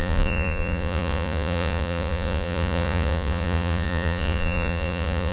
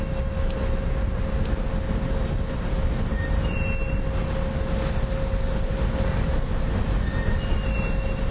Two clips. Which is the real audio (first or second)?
second